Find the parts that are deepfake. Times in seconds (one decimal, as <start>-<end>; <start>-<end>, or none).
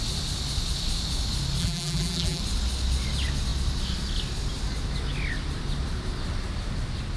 1.6-2.4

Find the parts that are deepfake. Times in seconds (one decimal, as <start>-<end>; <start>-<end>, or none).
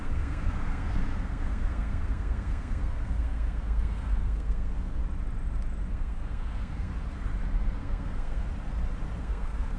0.0-5.0; 5.9-6.9; 7.8-8.5; 9.2-9.8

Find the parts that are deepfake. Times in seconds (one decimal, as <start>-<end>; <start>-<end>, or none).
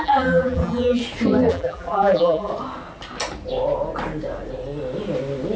0.0-1.0; 1.5-2.5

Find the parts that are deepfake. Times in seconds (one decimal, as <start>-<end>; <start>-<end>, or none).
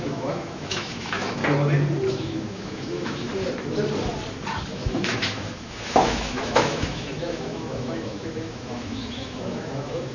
0.0-1.4; 2.1-3.3; 4.7-10.1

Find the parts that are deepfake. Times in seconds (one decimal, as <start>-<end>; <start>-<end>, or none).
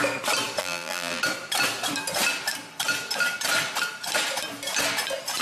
0.6-1.2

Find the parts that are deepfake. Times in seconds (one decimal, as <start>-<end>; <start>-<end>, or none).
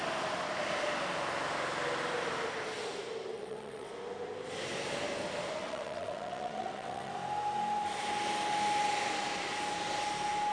3.3-3.9; 5.6-7.1